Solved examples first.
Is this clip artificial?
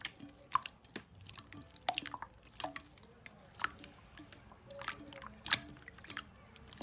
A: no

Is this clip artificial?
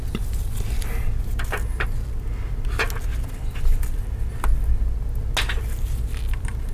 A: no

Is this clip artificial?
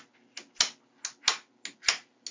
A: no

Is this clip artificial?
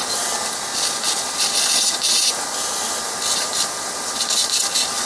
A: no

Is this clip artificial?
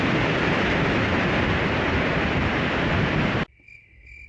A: no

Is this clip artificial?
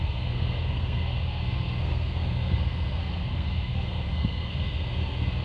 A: yes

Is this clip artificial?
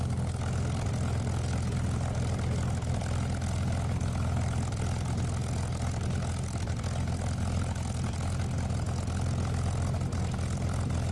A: no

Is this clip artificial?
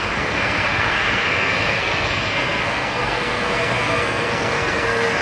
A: yes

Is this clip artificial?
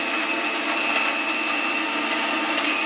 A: no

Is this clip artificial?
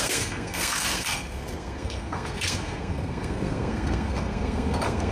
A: yes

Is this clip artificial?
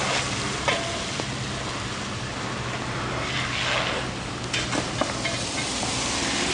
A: no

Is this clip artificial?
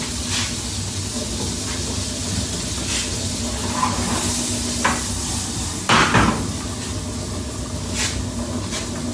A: no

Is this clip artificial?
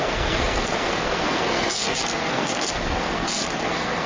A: yes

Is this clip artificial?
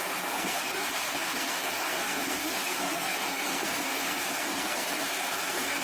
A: yes